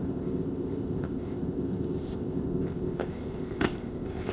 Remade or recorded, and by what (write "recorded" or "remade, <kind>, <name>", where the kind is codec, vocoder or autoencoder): remade, codec, ZipCodec